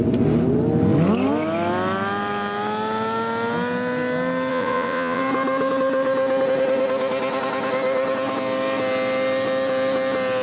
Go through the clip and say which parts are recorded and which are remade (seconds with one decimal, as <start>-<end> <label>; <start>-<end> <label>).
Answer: 0.0-4.5 recorded; 4.5-5.2 remade; 5.2-10.4 recorded